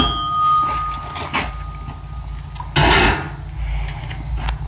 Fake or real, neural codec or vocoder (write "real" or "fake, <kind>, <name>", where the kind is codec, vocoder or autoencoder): real